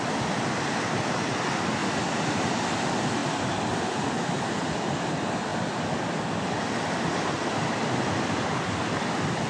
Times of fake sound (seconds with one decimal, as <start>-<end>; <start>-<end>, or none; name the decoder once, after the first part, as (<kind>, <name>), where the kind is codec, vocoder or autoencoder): 3.2-5.1 (vocoder, BigVGAN v2)